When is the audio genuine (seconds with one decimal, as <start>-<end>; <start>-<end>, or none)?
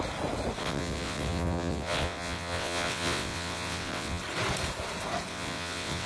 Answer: 0.0-0.6; 4.2-5.3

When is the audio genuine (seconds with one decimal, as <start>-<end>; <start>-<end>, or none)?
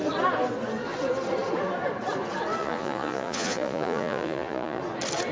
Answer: 0.0-2.6; 4.8-5.3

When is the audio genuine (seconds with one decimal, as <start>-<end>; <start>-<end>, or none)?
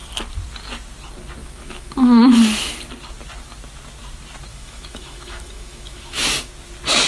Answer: 0.0-1.4; 2.8-4.5; 6.5-7.1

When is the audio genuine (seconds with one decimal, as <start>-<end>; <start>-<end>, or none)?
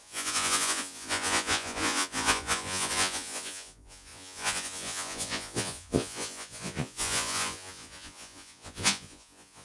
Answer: none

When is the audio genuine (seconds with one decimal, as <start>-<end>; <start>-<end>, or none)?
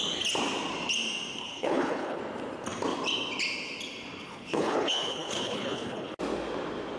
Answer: 0.0-1.4; 2.2-4.3; 6.2-7.0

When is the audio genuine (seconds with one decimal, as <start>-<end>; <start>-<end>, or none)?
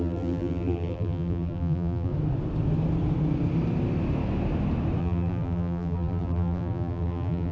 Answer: 2.1-5.0